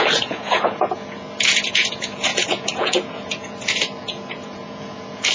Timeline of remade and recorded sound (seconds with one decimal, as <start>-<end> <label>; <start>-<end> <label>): 0.0-5.3 remade